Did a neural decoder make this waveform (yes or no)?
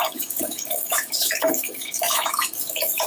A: yes